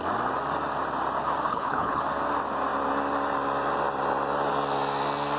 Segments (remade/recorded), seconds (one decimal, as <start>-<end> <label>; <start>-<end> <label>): 0.0-1.5 recorded; 1.5-2.0 remade; 2.0-5.4 recorded